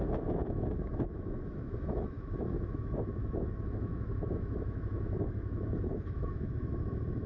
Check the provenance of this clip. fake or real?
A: fake